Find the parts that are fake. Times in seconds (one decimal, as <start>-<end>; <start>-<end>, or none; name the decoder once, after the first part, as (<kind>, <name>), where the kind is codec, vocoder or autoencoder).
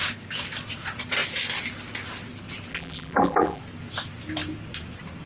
2.7-3.6 (vocoder, BigVGAN v2)